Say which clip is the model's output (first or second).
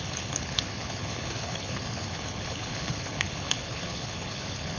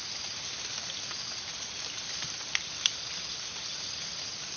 first